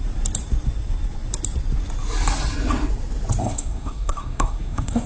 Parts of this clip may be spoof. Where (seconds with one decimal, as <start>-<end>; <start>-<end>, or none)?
3.4-5.1